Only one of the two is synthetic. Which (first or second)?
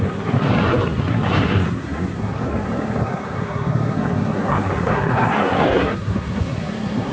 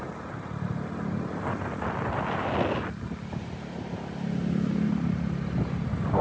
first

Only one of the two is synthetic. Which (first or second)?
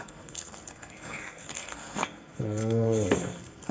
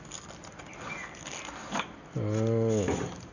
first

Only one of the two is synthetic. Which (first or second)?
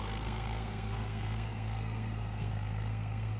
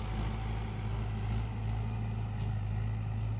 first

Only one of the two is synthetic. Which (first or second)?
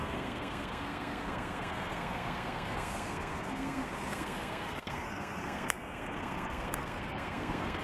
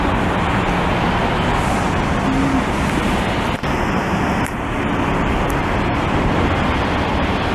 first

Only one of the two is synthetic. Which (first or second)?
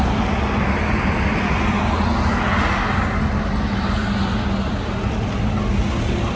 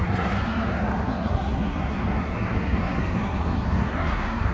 second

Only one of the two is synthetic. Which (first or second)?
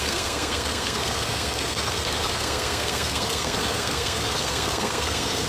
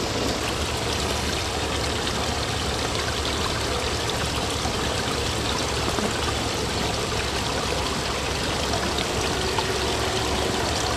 first